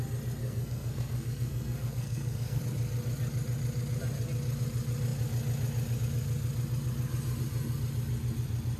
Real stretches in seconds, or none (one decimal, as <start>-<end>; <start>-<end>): 0.0-0.4; 2.6-8.8